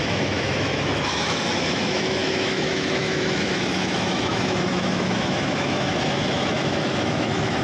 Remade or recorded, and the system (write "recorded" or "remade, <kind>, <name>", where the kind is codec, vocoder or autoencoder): remade, autoencoder, DAC-VAE